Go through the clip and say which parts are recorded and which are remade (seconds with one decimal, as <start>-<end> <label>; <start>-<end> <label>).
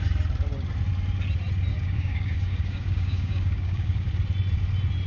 0.0-1.7 recorded; 1.7-4.1 remade; 4.1-5.1 recorded